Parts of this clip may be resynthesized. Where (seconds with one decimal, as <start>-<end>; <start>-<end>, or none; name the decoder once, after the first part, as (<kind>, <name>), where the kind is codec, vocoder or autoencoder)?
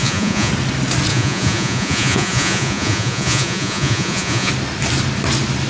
0.0-0.5 (vocoder, Vocos); 1.1-4.5